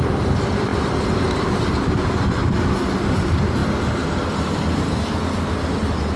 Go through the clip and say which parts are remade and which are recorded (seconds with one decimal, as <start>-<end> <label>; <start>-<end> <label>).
0.0-0.7 remade; 0.7-1.9 recorded; 1.9-2.4 remade; 2.4-3.1 recorded; 3.1-3.6 remade; 3.6-6.2 recorded